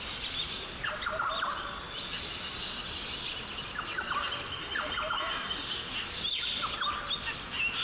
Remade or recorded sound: recorded